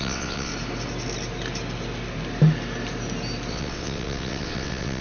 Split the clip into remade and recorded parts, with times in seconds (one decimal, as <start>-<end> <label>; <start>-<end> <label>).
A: 0.0-0.5 remade; 0.5-3.5 recorded; 3.5-5.0 remade